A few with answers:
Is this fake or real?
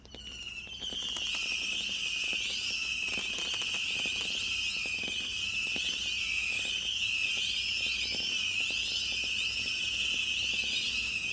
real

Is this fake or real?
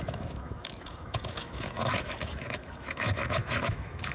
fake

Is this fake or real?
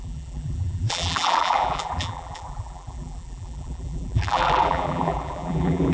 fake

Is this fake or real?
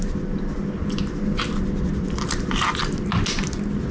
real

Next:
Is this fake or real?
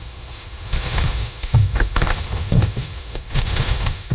fake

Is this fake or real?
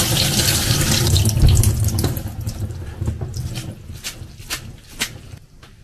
real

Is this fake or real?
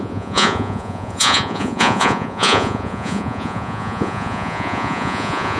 fake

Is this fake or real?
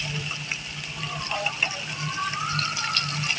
real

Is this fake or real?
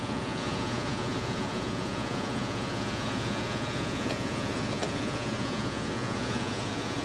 fake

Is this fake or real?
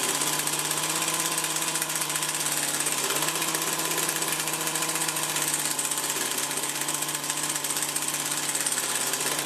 real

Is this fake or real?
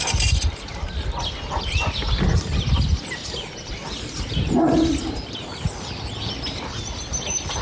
real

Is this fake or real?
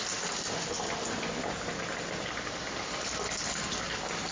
real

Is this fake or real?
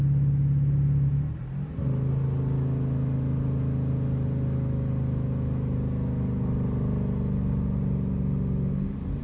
real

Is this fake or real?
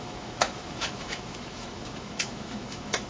fake